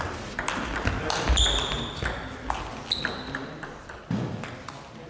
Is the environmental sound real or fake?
real